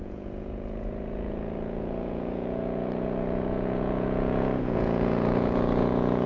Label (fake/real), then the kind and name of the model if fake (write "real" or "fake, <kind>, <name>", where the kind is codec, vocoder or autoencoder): fake, vocoder, Vocos